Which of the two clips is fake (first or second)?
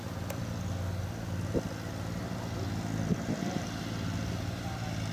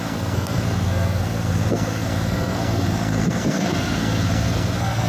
second